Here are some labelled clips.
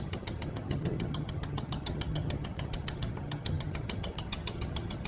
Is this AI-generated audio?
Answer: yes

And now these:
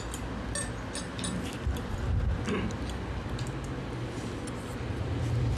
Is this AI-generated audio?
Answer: no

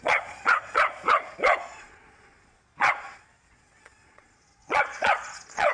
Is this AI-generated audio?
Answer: yes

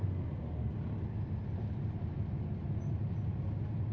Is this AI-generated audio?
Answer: no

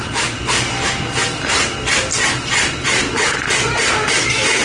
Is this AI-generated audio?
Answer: no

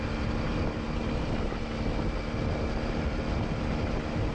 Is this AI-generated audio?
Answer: no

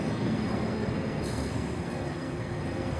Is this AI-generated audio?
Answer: yes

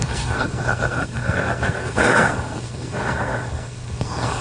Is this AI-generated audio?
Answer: yes